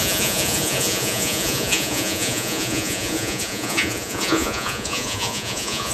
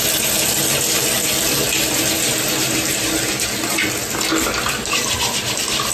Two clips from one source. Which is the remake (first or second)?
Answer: first